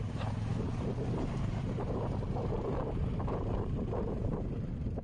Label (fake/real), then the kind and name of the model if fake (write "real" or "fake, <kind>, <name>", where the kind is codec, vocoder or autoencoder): fake, vocoder, BigVGAN v2